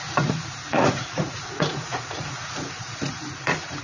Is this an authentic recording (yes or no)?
no